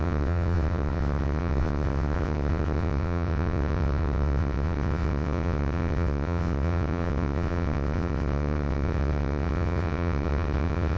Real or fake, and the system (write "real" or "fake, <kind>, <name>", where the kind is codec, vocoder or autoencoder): fake, vocoder, WaveNeXt